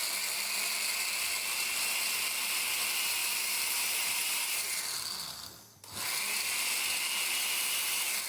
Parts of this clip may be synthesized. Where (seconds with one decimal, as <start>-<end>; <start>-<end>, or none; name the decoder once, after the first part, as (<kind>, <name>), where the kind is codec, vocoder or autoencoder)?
3.2-4.8 (vocoder, BigVGAN v2)